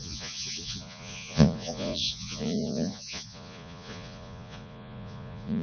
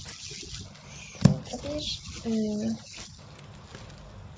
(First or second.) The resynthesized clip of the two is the first